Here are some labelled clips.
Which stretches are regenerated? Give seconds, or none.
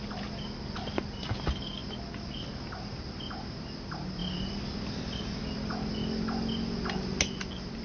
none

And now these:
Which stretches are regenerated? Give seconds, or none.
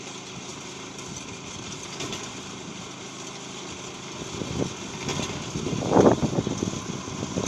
0.5-2.8 (vocoder, BigVGAN v2)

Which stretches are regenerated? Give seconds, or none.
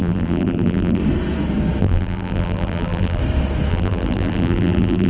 0.0-1.0 (vocoder, BigVGAN v2); 1.8-3.2; 3.7-5.1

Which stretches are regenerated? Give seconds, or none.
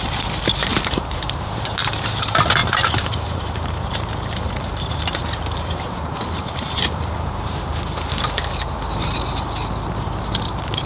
0.7-1.6 (vocoder, BigVGAN v2); 2.6-7.6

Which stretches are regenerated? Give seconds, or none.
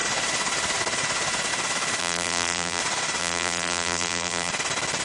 2.0-2.8 (vocoder, BigVGAN v2); 3.2-4.5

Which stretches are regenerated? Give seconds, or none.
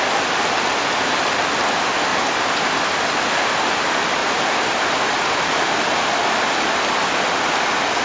2.1-2.8 (vocoder, BigVGAN v2); 4.2-5.6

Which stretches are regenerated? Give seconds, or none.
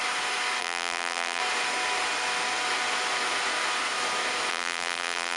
0.6-1.4 (vocoder, BigVGAN v2); 4.5-5.4